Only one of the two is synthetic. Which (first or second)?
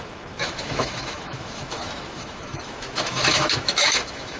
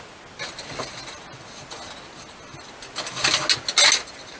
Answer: first